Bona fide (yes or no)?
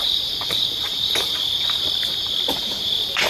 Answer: no